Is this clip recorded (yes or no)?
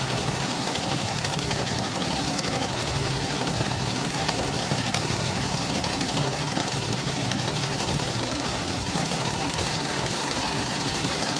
no